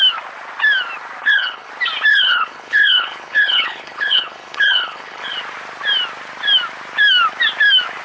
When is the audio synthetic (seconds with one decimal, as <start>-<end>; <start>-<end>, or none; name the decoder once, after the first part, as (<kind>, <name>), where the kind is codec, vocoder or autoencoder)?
1.2-1.7 (codec, HILCodec); 2.1-5.3